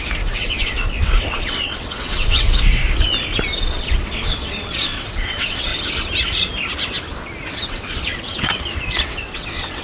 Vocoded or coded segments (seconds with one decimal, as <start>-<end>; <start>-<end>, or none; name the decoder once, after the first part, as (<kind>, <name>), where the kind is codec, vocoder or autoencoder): 0.0-2.8 (vocoder, WaveNeXt); 3.8-5.7; 7.5-9.8